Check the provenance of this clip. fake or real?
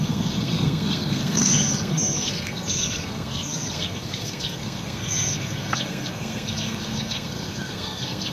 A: fake